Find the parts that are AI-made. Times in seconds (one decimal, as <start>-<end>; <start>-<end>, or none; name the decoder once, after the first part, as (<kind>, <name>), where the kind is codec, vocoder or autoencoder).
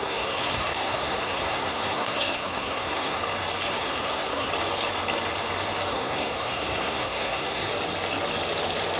0.0-3.2 (codec, SNAC); 3.7-4.5; 5.9-7.7